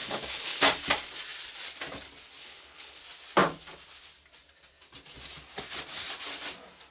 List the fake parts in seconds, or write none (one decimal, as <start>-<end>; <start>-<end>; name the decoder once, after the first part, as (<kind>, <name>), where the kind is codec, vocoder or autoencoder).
0.0-0.6 (codec, HILCodec); 2.4-3.0